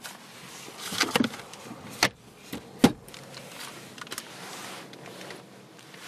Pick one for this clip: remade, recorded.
recorded